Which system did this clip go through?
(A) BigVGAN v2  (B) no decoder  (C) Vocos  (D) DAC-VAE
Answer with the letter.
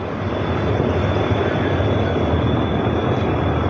B